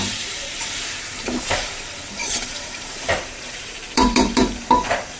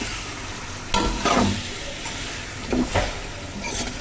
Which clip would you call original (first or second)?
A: second